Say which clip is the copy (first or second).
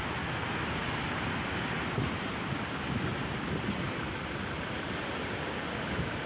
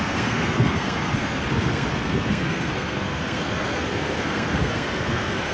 second